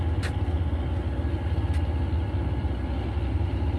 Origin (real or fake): real